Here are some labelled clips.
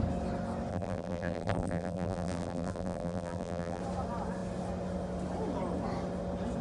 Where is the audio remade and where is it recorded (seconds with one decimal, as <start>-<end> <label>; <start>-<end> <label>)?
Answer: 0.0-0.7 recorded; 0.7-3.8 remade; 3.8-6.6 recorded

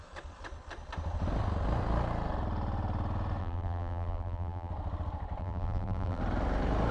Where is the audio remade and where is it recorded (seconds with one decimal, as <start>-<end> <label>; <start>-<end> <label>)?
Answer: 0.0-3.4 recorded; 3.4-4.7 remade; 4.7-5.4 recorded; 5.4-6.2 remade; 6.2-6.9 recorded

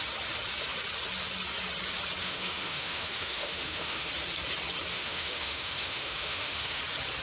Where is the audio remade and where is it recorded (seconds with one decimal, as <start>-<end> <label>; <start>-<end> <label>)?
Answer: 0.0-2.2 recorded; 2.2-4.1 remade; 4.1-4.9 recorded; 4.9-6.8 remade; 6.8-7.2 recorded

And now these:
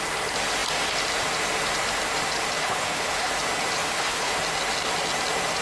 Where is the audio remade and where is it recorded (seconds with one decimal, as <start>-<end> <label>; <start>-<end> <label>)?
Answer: 0.0-2.6 recorded; 2.6-3.3 remade; 3.3-3.8 recorded; 3.8-4.3 remade; 4.3-5.6 recorded

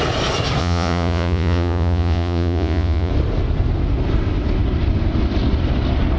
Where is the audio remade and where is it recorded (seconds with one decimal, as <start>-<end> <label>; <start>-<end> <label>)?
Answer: 0.0-0.6 recorded; 0.6-3.1 remade; 3.1-6.2 recorded

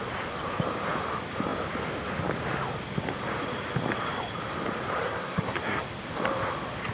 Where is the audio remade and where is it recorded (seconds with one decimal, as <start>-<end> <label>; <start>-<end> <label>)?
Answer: 0.0-5.0 recorded; 5.0-5.8 remade; 5.8-6.9 recorded

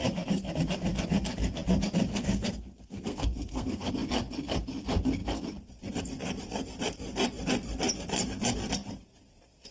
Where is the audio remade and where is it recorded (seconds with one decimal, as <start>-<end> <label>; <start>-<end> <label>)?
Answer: 0.0-2.1 recorded; 2.1-3.9 remade; 3.9-9.7 recorded

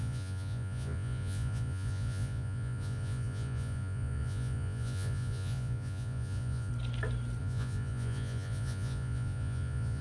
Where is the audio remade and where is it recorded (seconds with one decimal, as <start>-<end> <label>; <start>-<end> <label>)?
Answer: 0.0-6.7 remade; 6.7-7.4 recorded; 7.4-10.0 remade